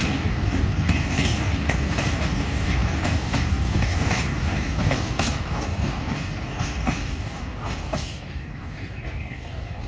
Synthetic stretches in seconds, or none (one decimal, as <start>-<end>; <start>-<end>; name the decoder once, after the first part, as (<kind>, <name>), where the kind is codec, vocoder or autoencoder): 0.0-9.9 (codec, DAC)